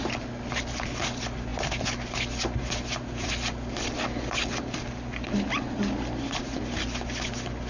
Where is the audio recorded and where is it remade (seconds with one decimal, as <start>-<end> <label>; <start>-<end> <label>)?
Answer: 0.0-7.7 recorded